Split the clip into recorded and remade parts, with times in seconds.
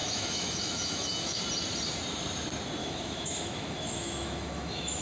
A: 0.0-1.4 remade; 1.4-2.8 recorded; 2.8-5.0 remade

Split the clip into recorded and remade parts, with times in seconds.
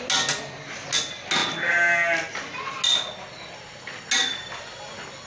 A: 0.0-5.3 recorded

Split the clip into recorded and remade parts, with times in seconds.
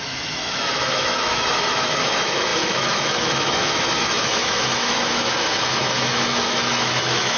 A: 0.0-7.4 remade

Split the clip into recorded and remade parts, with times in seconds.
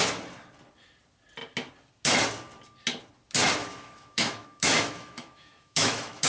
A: 0.0-3.6 recorded; 3.6-6.3 remade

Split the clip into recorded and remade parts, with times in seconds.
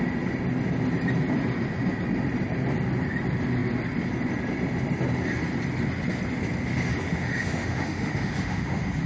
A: 0.0-6.9 recorded; 6.9-9.1 remade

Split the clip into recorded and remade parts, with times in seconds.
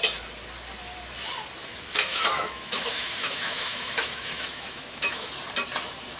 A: 0.0-1.6 recorded; 1.6-5.3 remade; 5.3-6.2 recorded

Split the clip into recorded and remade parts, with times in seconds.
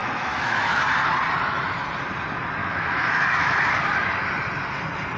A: 0.0-0.8 remade; 0.8-2.6 recorded; 2.6-3.6 remade; 3.6-5.2 recorded